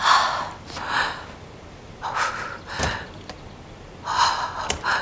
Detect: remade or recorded recorded